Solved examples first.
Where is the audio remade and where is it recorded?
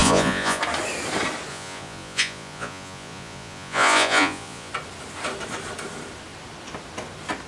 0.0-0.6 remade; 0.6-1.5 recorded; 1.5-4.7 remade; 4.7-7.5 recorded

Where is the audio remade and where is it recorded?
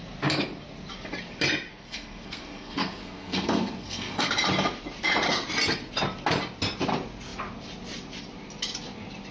0.0-1.7 recorded; 1.7-4.3 remade; 4.3-9.3 recorded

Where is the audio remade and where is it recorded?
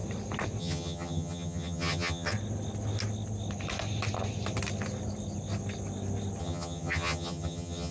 0.0-0.6 recorded; 0.6-2.3 remade; 2.3-6.4 recorded; 6.4-7.9 remade